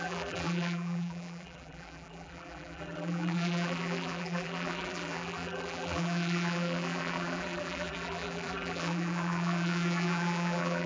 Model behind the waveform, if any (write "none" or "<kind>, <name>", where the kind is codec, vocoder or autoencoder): vocoder, BigVGAN v2